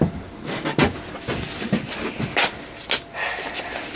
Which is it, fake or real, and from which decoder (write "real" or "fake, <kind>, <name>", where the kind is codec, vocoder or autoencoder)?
real